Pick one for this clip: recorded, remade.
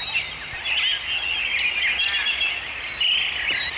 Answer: recorded